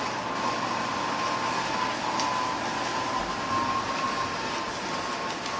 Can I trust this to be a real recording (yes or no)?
yes